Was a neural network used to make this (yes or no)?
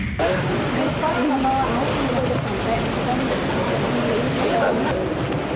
no